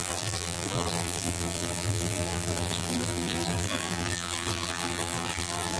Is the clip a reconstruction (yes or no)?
yes